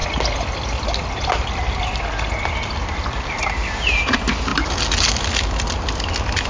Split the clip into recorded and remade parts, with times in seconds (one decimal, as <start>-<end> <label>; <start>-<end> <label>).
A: 0.0-6.5 recorded